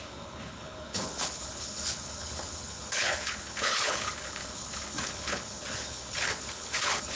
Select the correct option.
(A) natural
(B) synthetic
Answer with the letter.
B